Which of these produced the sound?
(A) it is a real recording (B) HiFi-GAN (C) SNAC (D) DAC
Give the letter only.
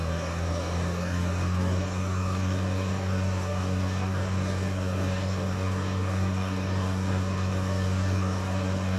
D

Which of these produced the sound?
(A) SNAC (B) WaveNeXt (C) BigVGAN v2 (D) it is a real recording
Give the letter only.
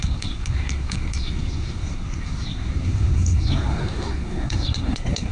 A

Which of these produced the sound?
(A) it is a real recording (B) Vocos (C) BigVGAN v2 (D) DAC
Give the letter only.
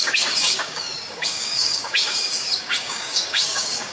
D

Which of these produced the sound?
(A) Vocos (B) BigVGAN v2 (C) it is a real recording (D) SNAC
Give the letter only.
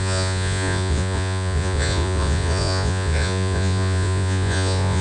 A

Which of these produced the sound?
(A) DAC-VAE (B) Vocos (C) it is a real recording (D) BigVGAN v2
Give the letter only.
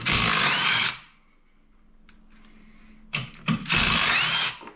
C